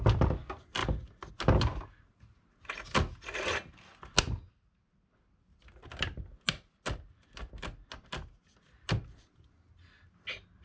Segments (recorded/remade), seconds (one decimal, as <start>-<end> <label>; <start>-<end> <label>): 0.0-10.6 recorded